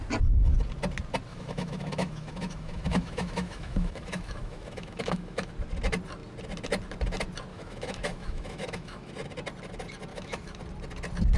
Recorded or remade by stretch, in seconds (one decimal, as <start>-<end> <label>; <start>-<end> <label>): 0.0-1.3 recorded; 1.3-5.5 remade; 5.5-7.5 recorded; 7.5-9.1 remade; 9.1-10.1 recorded; 10.1-10.6 remade; 10.6-11.4 recorded